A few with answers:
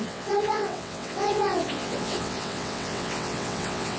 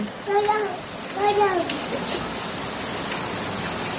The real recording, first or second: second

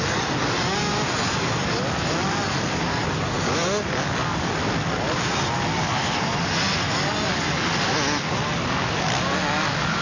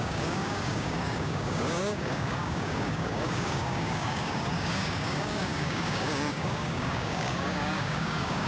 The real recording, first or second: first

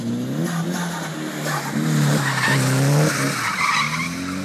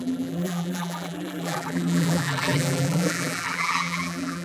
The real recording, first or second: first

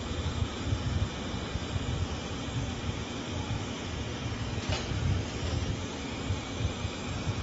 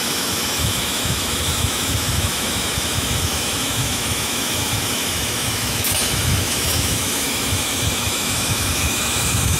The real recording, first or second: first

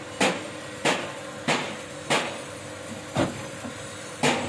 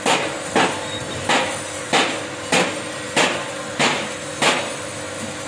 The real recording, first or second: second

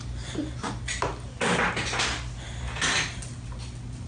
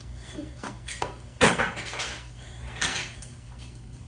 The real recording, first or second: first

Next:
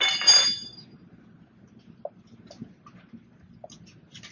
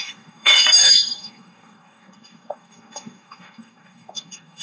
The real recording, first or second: first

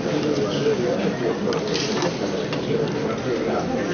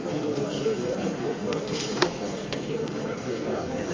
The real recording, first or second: first